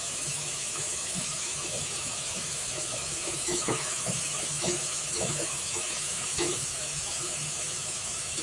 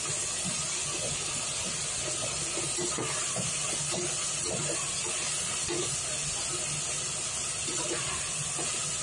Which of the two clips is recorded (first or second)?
second